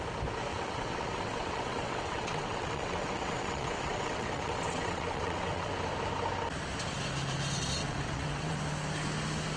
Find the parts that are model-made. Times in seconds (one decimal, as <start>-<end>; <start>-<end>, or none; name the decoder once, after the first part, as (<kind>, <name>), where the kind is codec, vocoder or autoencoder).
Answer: 0.5-5.7 (vocoder, WaveNeXt); 7.8-8.6